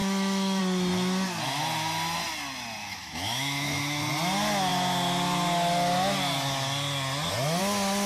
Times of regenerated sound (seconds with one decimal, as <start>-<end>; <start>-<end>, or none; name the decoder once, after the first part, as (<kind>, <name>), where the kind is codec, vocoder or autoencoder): 0.0-0.6 (autoencoder, DAC-VAE); 2.8-4.0